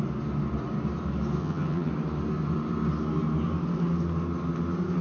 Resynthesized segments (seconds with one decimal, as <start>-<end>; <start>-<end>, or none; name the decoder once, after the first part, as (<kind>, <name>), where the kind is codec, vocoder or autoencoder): 1.4-1.9 (vocoder, HiFi-GAN)

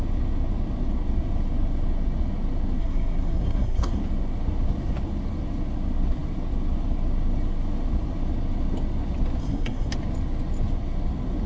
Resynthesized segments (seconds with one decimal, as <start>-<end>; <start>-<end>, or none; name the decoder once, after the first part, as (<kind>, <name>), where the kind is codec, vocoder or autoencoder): 2.8-4.0 (codec, SNAC); 9.4-9.9